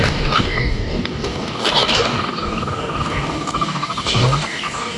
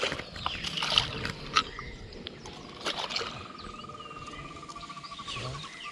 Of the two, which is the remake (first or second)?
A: first